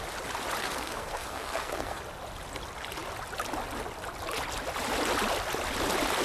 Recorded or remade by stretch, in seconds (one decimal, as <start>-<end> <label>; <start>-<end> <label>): 0.0-0.6 recorded; 0.6-2.0 remade; 2.0-6.2 recorded